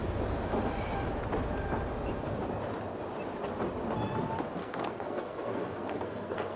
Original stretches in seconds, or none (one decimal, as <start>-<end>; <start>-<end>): 0.0-4.6